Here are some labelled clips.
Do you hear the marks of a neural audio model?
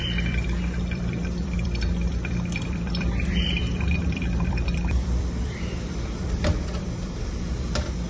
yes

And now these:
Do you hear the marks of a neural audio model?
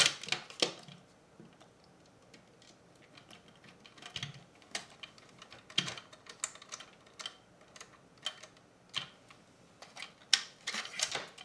no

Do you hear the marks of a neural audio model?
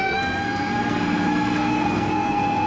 yes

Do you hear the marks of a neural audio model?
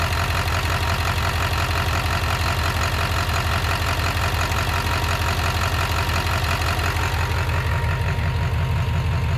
no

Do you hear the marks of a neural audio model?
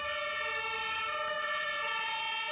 no